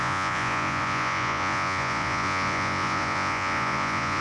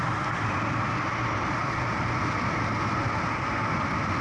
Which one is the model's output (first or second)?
first